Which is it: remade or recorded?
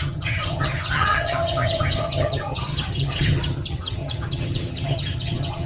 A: remade